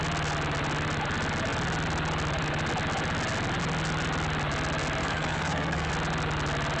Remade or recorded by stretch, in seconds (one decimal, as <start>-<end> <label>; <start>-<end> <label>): 0.0-5.0 recorded; 5.0-5.9 remade; 5.9-6.8 recorded